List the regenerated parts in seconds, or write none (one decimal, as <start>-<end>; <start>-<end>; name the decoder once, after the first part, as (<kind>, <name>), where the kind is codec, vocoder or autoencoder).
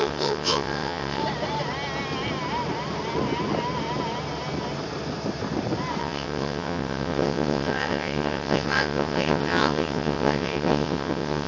0.0-1.2 (vocoder, WaveNeXt); 6.0-11.5